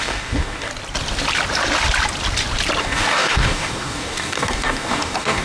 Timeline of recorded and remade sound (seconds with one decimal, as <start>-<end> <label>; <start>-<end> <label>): 0.0-0.7 remade; 0.7-2.8 recorded; 2.8-5.4 remade